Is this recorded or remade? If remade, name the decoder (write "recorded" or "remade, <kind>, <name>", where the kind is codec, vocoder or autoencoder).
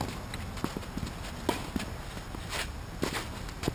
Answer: recorded